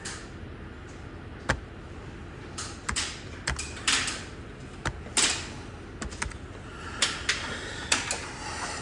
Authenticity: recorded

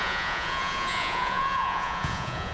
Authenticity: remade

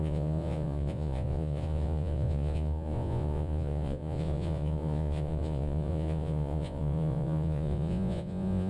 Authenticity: remade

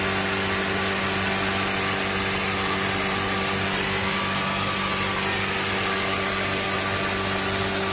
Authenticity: recorded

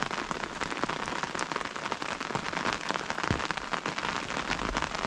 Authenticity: recorded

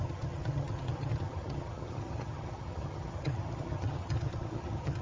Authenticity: remade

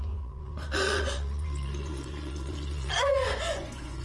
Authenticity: remade